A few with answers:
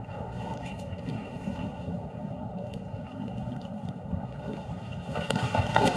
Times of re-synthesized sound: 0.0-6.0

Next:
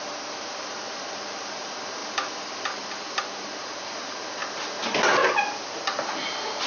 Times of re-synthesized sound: 0.0-2.0; 3.2-4.4; 5.9-6.7

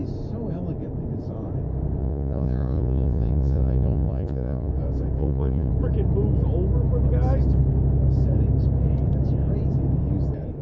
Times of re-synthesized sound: 2.0-4.7; 5.2-5.7

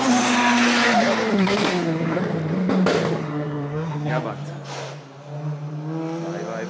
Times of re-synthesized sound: 1.3-2.2; 3.2-4.1